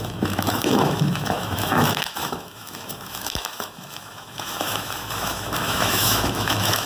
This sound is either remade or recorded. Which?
remade